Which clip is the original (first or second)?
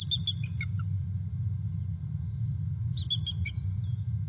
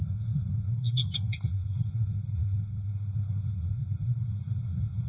first